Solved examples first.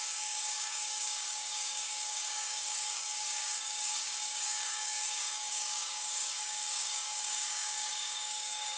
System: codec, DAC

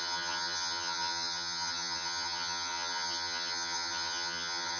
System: vocoder, HiFi-GAN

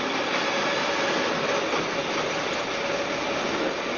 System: none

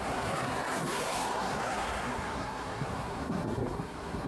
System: codec, SNAC